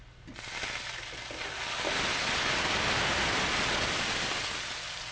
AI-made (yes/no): no